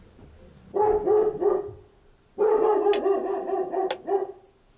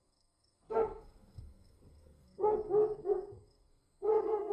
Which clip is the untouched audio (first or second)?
first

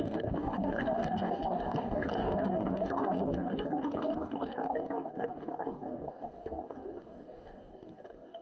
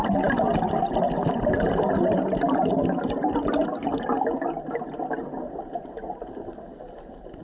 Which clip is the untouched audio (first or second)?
second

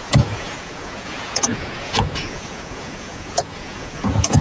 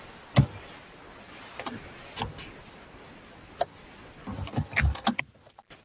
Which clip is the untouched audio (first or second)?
second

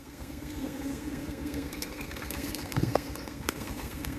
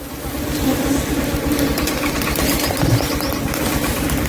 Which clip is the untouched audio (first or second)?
second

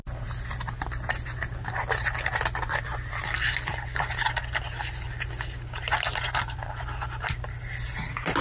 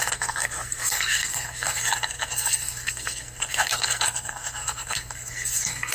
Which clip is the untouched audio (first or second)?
first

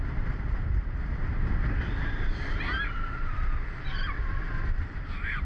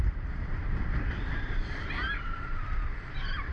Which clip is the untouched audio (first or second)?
first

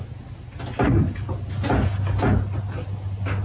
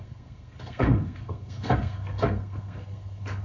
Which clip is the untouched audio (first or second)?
first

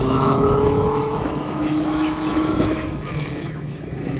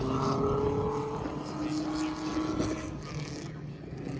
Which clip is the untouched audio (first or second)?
second